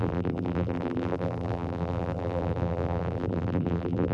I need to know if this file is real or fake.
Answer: fake